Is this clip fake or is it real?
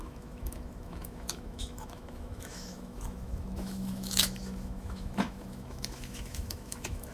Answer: fake